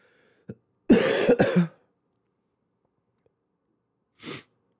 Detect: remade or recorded recorded